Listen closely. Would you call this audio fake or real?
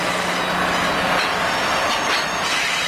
real